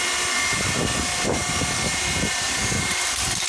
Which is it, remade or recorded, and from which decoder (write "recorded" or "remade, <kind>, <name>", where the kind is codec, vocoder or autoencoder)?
recorded